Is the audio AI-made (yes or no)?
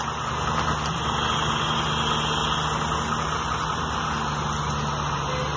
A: no